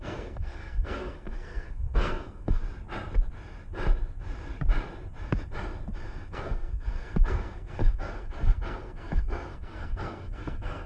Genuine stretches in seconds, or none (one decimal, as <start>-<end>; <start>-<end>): 2.6-6.3